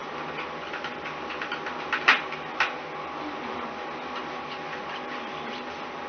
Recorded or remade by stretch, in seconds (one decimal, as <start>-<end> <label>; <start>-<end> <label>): 0.0-6.1 recorded